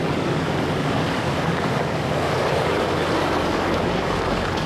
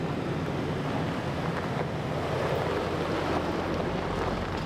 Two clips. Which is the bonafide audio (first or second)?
second